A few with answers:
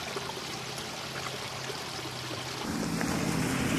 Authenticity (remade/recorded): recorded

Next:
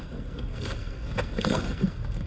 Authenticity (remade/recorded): remade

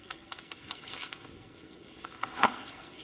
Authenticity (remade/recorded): remade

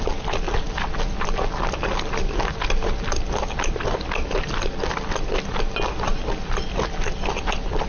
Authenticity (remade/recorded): recorded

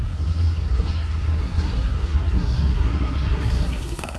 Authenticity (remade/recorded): remade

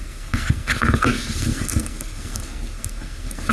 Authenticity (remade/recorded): remade